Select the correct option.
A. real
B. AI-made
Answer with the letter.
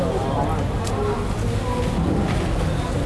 A